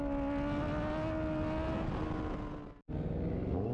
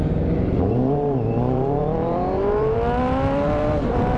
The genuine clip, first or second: first